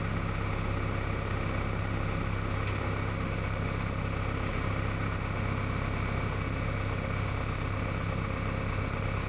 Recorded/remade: remade